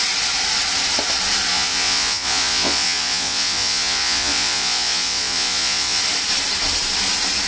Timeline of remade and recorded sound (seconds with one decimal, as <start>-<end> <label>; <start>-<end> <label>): 0.0-1.5 recorded; 1.5-6.0 remade; 6.0-7.5 recorded